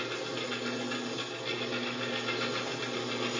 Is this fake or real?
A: real